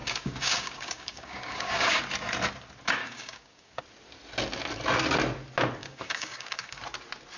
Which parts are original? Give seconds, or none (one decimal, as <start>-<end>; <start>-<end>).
2.0-3.0; 3.8-5.8; 6.8-7.4